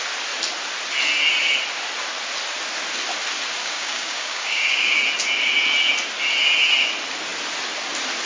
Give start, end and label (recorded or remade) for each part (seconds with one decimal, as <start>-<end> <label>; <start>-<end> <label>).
0.0-3.6 recorded; 3.6-5.0 remade; 5.0-8.3 recorded